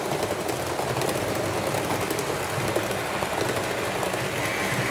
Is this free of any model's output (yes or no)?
yes